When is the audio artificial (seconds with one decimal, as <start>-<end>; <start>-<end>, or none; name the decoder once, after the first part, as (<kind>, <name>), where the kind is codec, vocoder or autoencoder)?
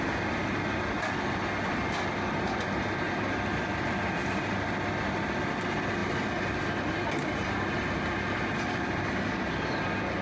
none